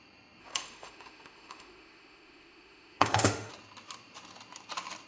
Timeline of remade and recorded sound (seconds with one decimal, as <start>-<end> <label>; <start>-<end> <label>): 0.0-0.4 recorded; 0.4-3.5 remade; 3.5-5.1 recorded